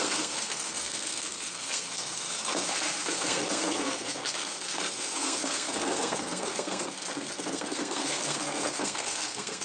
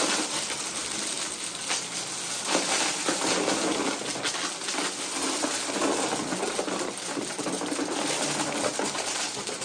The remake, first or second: first